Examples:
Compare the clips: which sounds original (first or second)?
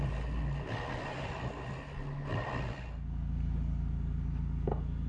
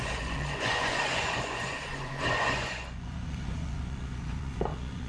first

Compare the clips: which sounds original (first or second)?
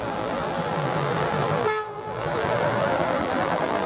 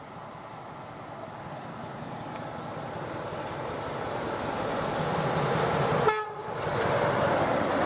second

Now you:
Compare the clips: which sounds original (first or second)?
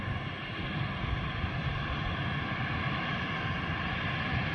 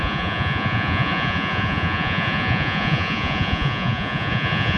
first